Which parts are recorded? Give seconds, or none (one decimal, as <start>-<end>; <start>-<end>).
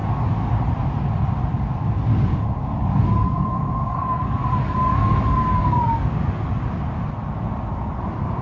0.0-2.3; 6.5-8.4